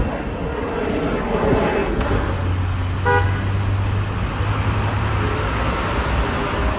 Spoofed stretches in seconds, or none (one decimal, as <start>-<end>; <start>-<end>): none